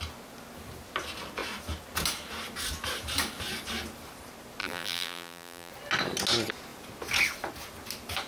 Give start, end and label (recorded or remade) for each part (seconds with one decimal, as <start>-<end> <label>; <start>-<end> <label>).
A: 0.0-4.6 recorded; 4.6-5.7 remade; 5.7-8.3 recorded